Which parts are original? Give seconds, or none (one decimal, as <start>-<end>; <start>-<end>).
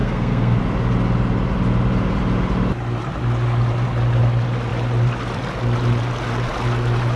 0.6-7.2